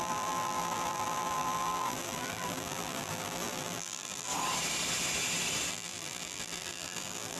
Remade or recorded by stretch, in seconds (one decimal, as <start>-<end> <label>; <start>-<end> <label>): 0.0-4.3 remade; 4.3-5.7 recorded; 5.7-7.4 remade